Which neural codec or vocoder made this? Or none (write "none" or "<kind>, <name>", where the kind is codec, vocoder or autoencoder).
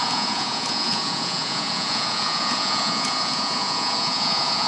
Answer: vocoder, Vocos